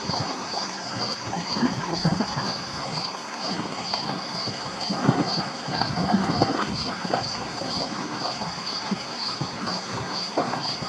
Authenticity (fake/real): fake